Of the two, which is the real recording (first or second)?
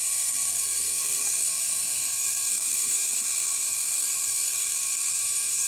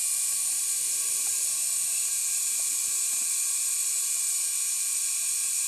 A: second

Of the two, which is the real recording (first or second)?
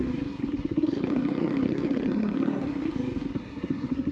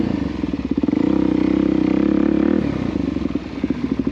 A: second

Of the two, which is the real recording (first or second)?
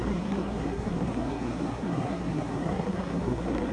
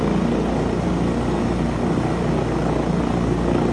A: second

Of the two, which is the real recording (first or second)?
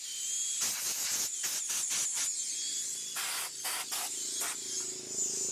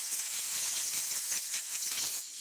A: first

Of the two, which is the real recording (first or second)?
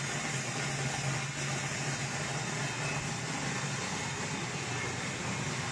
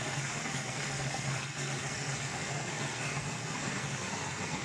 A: first